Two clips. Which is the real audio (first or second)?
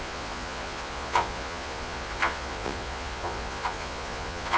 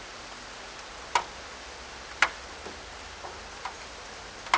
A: second